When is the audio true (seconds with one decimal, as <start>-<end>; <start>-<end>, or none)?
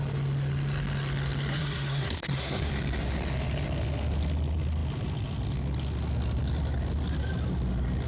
0.0-1.5; 2.7-8.1